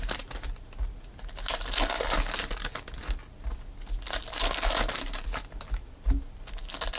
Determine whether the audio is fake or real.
real